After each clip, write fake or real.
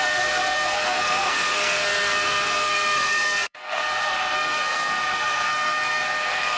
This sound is fake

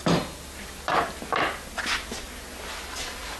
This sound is real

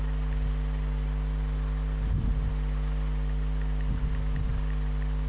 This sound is real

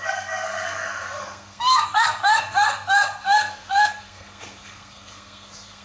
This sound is fake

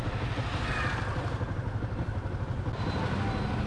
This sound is real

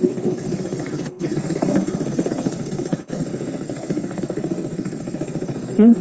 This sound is fake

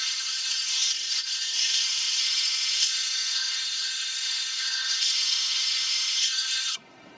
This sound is fake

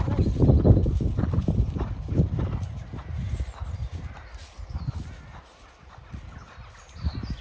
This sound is real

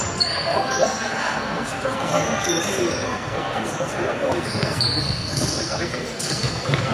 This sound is fake